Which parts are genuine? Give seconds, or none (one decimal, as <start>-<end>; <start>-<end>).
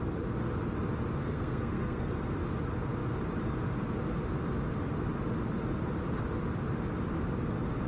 0.0-1.2; 2.1-7.9